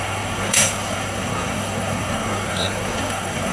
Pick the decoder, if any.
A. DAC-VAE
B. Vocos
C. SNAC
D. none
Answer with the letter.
C